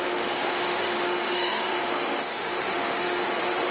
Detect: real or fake fake